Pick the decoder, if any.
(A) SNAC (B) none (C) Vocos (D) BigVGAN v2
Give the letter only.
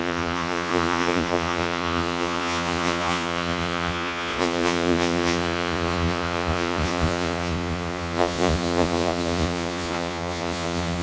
C